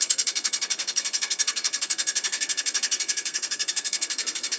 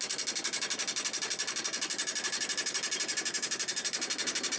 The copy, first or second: first